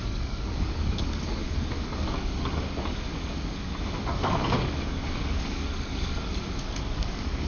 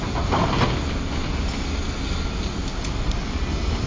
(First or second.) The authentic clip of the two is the second